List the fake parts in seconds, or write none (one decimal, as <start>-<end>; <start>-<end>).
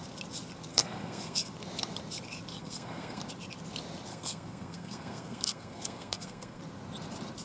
0.7-1.5; 2.6-3.2; 4.1-6.6